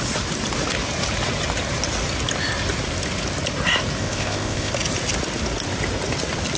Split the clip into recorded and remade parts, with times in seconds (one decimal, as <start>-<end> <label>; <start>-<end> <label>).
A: 0.0-4.0 recorded; 4.0-4.7 remade; 4.7-6.6 recorded